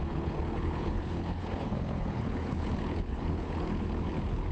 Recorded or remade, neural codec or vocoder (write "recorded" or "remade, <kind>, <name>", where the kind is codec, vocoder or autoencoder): remade, codec, HILCodec